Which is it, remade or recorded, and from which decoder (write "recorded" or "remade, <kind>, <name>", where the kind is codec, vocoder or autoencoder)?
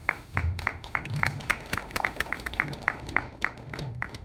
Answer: remade, autoencoder, DAC-VAE